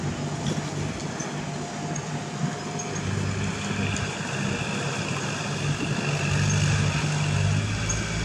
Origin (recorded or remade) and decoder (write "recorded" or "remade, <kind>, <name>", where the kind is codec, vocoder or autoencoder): recorded